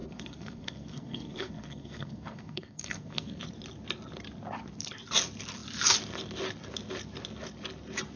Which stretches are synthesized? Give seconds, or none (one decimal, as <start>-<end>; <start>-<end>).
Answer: 0.0-3.4